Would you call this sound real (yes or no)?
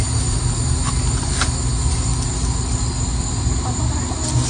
yes